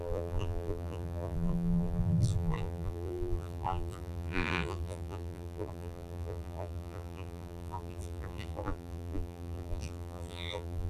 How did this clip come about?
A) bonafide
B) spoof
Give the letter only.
B